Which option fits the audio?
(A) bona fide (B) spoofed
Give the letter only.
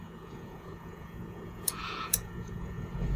B